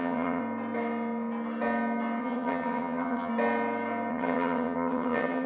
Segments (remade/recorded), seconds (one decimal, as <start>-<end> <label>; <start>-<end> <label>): 0.0-0.4 remade; 0.4-2.2 recorded; 2.2-3.3 remade; 3.3-4.1 recorded; 4.1-5.5 remade